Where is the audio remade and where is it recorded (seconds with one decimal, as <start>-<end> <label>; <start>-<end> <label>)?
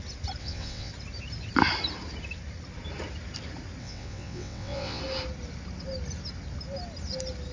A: 0.0-0.4 recorded; 0.4-0.9 remade; 0.9-3.8 recorded; 3.8-5.0 remade; 5.0-7.5 recorded